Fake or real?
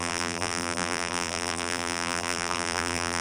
fake